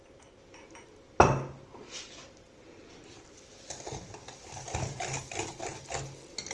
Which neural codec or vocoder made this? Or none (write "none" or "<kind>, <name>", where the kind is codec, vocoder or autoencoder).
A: vocoder, BigVGAN v2